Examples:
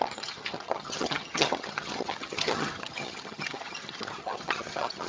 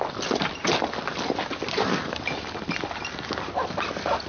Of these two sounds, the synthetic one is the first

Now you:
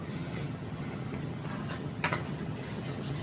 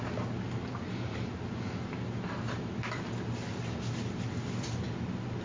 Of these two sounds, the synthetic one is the first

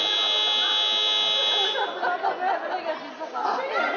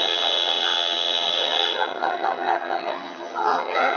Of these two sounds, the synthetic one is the second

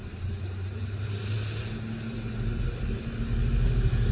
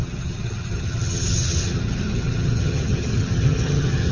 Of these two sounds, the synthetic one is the second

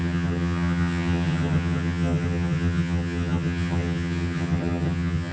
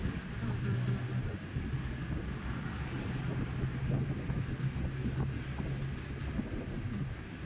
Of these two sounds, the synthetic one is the first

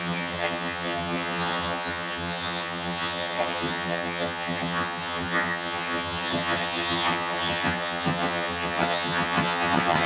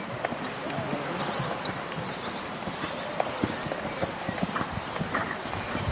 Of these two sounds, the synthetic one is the first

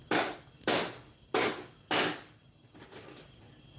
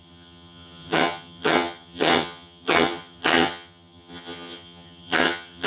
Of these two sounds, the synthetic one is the second